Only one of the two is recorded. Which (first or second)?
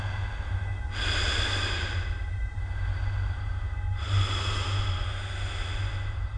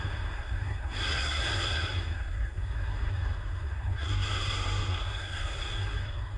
first